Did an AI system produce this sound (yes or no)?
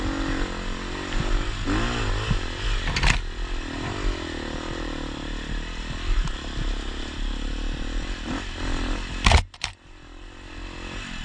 no